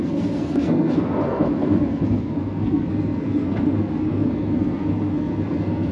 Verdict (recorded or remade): remade